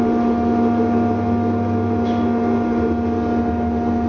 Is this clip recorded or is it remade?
recorded